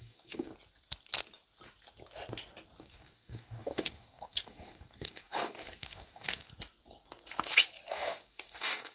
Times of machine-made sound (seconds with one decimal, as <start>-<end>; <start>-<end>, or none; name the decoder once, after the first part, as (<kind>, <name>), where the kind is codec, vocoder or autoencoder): 0.0-0.5 (codec, DAC); 2.8-6.5; 7.9-8.9